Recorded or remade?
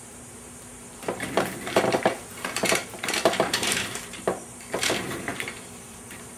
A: remade